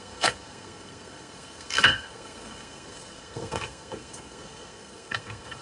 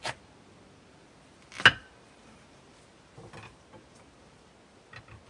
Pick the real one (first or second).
second